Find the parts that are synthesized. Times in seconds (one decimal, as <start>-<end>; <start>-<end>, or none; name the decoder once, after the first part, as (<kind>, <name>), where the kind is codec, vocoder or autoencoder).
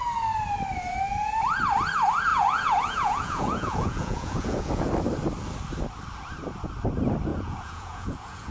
2.3-4.9 (vocoder, Vocos); 7.3-8.5